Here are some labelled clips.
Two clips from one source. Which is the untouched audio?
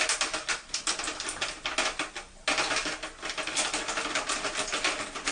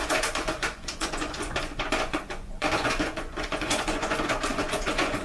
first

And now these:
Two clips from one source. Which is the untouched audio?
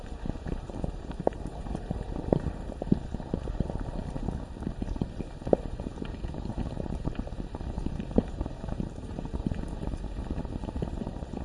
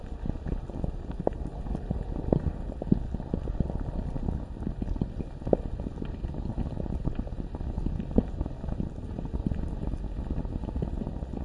second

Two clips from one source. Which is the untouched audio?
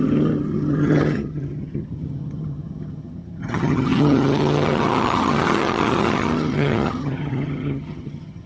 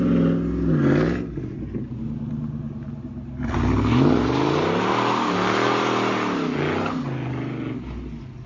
second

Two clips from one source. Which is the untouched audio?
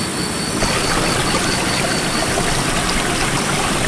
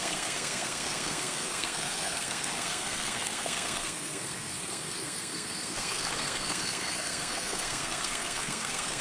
first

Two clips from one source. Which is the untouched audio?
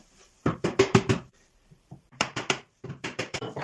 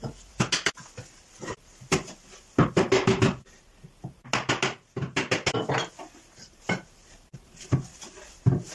second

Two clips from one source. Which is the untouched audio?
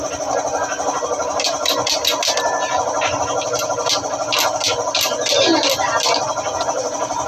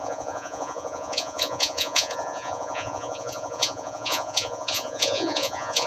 first